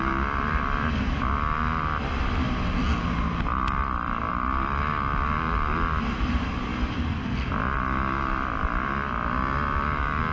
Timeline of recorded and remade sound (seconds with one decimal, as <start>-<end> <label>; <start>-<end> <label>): 0.0-10.3 recorded